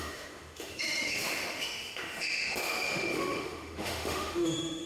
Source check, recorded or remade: remade